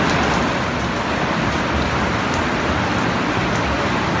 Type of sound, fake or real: real